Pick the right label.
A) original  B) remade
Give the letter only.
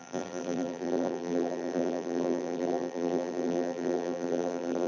B